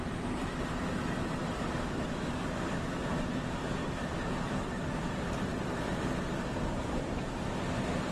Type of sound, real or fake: fake